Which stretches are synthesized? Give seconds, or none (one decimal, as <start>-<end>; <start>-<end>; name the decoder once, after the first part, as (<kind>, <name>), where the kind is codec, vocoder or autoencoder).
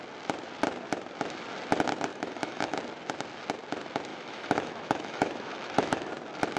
2.1-2.8 (autoencoder, DAC-VAE); 4.1-6.1